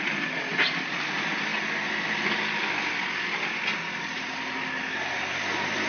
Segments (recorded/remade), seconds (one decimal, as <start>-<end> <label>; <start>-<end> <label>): 0.0-5.9 recorded